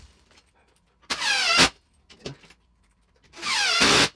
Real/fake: real